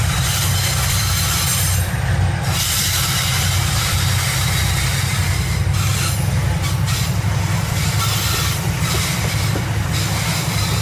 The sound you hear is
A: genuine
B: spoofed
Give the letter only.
B